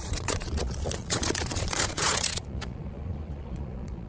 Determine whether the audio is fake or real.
fake